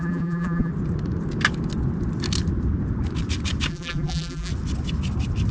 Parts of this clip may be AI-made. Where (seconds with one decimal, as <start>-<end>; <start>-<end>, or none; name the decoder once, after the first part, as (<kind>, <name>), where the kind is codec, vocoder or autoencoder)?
0.0-0.7 (vocoder, BigVGAN v2); 3.7-4.5

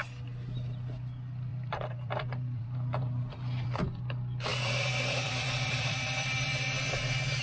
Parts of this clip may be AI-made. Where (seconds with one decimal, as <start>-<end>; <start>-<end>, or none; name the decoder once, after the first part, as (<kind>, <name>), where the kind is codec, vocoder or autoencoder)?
1.5-4.0 (vocoder, BigVGAN v2); 4.5-7.0

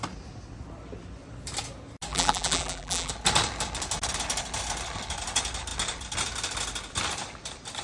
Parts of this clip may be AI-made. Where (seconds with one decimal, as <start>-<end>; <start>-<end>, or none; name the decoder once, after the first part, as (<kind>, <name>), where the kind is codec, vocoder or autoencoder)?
2.1-3.1 (vocoder, BigVGAN v2)